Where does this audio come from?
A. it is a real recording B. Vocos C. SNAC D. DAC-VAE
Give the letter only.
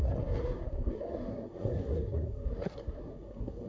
C